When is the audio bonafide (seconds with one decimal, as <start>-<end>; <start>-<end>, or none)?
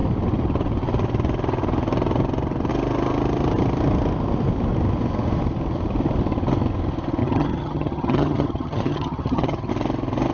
0.0-7.2; 9.7-10.3